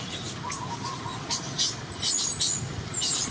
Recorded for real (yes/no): yes